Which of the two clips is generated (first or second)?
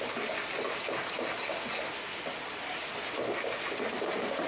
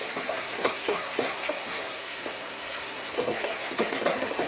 second